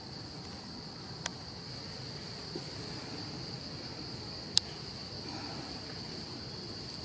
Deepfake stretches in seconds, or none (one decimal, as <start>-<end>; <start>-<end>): none

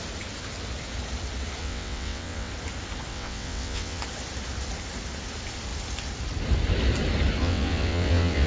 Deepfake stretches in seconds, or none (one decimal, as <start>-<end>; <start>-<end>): 1.6-2.5; 3.1-4.0; 7.4-8.5